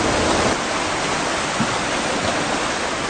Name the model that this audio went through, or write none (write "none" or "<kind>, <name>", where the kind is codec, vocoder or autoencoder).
none